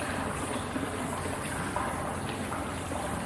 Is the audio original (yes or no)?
yes